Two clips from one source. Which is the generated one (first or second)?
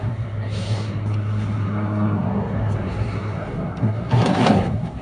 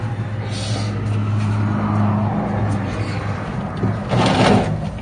first